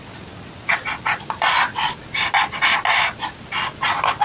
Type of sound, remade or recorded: recorded